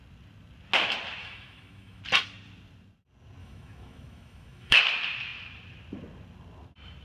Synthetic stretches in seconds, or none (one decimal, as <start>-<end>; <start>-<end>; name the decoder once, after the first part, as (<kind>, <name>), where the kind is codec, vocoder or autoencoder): 1.2-2.0 (autoencoder, DAC-VAE); 3.4-4.8